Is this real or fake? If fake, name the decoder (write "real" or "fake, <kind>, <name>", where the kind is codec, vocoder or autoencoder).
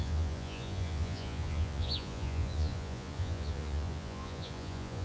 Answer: fake, vocoder, Vocos